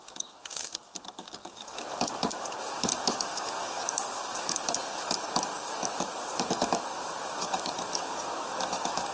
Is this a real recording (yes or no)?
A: no